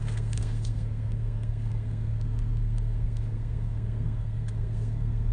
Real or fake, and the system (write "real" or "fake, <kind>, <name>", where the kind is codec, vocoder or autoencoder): fake, codec, SNAC